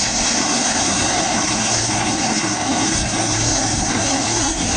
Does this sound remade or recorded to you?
remade